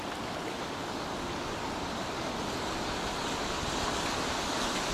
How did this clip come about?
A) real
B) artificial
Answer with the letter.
A